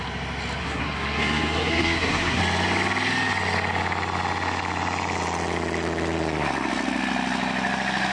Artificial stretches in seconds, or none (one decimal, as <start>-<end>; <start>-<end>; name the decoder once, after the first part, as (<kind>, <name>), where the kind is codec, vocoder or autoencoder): 0.6-2.4 (codec, SNAC)

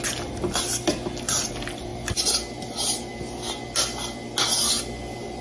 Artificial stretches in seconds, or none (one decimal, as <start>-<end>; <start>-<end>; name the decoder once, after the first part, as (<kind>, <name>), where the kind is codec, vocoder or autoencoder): none

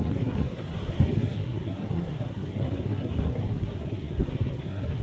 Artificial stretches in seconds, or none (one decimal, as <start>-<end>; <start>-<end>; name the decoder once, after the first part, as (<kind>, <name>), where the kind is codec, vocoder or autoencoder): 0.0-5.0 (codec, SNAC)

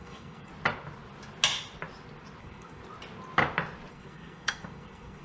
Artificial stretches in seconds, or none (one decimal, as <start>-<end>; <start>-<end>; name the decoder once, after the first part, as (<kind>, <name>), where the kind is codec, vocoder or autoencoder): 0.0-0.5 (codec, SNAC); 2.4-2.8; 3.9-5.2

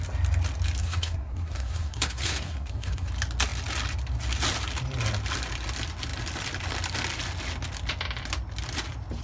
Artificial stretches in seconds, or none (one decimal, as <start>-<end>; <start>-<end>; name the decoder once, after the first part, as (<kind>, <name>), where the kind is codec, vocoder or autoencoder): 0.8-3.1 (codec, SNAC)

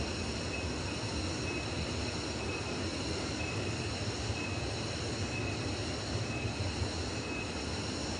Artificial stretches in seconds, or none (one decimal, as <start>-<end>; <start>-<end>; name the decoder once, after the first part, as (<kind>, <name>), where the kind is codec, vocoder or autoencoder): none

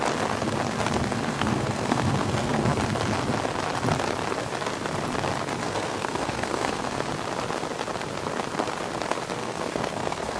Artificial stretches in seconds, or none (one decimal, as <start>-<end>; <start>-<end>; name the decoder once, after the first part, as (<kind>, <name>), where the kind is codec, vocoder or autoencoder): 1.3-2.8 (codec, SNAC); 5.6-7.1; 9.4-10.4

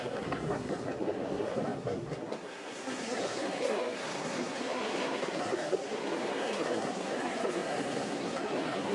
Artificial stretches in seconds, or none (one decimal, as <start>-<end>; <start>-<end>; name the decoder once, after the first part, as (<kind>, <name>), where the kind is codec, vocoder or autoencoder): 0.0-8.9 (codec, SNAC)